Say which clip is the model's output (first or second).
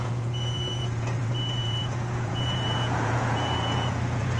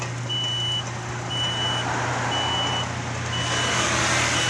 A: first